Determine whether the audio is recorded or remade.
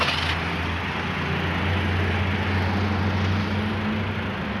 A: recorded